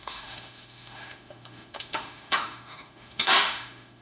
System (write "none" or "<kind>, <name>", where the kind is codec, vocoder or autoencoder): autoencoder, DAC-VAE